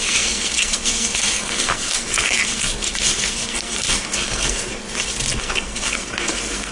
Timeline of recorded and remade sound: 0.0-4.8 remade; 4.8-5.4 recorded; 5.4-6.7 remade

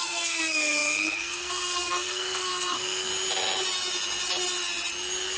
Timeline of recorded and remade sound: 0.0-3.1 remade; 3.1-5.4 recorded